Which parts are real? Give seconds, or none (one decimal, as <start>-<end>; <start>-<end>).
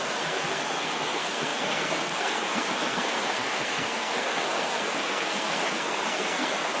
none